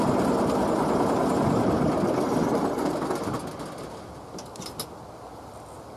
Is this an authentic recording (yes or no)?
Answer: yes